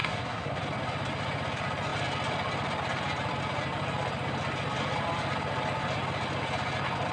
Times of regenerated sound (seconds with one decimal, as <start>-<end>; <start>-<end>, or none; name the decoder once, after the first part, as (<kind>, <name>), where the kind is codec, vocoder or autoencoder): 0.0-0.6 (codec, SNAC)